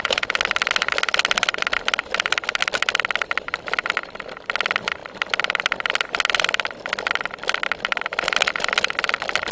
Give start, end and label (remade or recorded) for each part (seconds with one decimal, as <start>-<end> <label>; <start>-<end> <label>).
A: 0.0-9.5 recorded